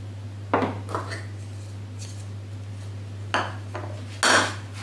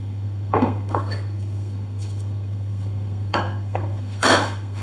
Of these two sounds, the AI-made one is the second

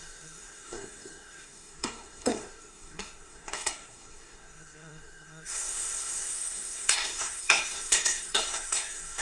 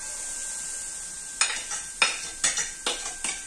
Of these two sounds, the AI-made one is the first